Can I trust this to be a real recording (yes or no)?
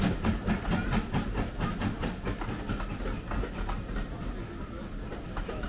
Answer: yes